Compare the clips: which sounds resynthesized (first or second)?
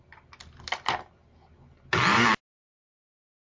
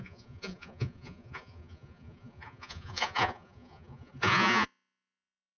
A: second